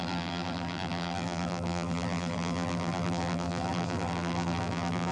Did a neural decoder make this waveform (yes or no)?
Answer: yes